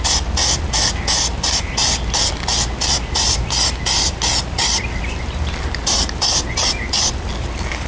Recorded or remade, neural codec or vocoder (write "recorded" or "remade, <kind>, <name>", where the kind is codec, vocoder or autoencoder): recorded